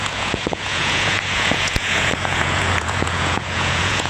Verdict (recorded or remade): remade